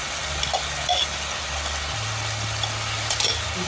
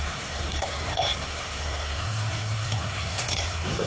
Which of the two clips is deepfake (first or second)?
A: second